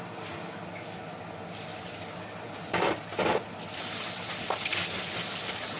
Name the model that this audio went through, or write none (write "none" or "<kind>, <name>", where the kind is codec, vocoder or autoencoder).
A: none